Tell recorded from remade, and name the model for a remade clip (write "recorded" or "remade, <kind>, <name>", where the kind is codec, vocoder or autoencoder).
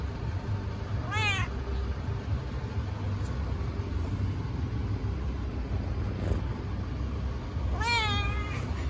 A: recorded